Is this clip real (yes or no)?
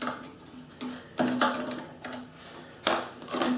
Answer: yes